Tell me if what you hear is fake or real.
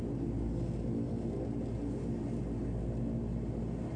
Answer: real